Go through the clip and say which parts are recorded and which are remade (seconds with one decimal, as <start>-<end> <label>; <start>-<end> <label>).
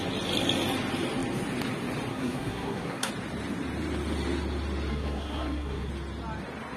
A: 0.0-2.1 recorded; 2.1-3.1 remade; 3.1-4.9 recorded; 4.9-5.9 remade; 5.9-6.8 recorded